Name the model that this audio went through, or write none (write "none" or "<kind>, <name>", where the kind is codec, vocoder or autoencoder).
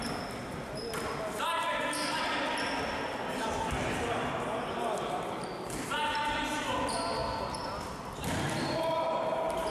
none